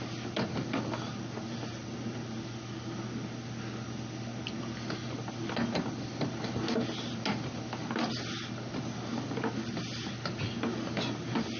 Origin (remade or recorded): recorded